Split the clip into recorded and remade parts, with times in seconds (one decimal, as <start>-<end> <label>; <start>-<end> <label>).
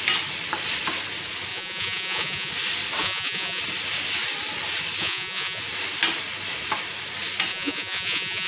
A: 0.0-1.5 recorded; 1.5-2.5 remade; 2.5-3.0 recorded; 3.0-3.6 remade; 3.6-5.0 recorded; 5.0-5.6 remade; 5.6-7.5 recorded; 7.5-8.5 remade